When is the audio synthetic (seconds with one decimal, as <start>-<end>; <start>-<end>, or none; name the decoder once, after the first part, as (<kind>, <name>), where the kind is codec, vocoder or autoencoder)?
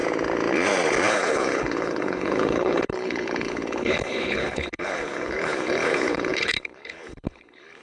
1.1-7.8 (codec, HILCodec)